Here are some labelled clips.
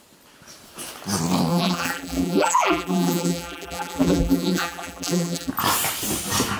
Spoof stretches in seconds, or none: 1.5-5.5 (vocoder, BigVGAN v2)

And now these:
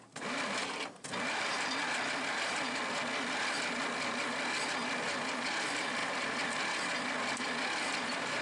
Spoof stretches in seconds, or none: none

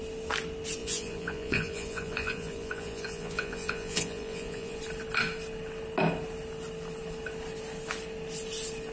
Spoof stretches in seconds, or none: 0.8-4.8 (vocoder, Vocos)

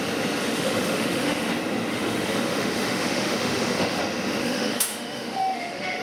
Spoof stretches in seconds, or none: 0.4-1.5 (autoencoder, DAC-VAE); 1.9-4.0; 4.4-6.0

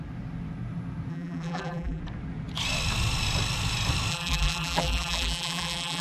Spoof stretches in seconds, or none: 1.1-2.0 (vocoder, BigVGAN v2); 4.1-6.0

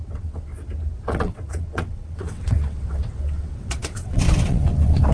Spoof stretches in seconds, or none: 0.0-0.5 (vocoder, WaveNeXt); 1.0-5.1

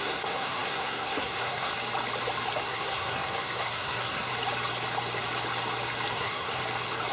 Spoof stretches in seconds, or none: 0.0-1.7 (codec, SNAC); 2.6-4.3; 6.1-6.6